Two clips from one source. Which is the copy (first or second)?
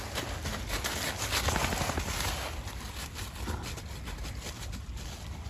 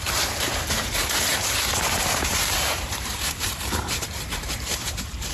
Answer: second